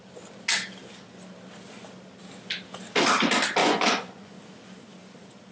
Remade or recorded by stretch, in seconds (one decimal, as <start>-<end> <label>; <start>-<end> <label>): 0.0-3.6 recorded; 3.6-4.4 remade; 4.4-5.5 recorded